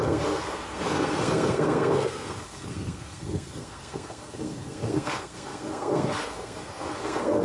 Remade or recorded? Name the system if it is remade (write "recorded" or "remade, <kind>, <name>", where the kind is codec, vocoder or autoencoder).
remade, codec, SNAC